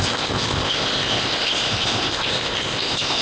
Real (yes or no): no